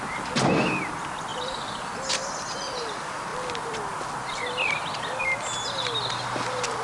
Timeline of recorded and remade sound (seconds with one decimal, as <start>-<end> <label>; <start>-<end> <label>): 0.0-1.3 recorded; 1.3-1.9 remade; 1.9-6.8 recorded